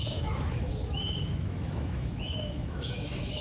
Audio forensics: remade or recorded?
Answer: remade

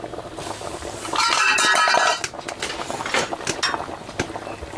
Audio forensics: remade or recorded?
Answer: recorded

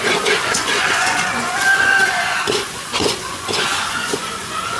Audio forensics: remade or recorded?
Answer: remade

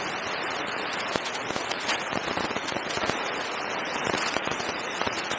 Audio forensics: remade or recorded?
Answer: remade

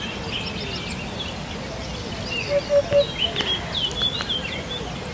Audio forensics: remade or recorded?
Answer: recorded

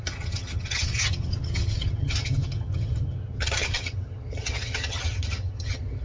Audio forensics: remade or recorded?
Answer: remade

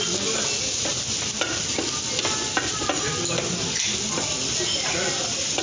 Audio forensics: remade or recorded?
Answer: recorded